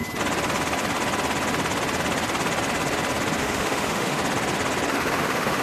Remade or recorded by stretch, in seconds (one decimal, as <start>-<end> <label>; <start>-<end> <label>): 0.0-3.4 recorded; 3.4-4.2 remade; 4.2-4.9 recorded; 4.9-5.6 remade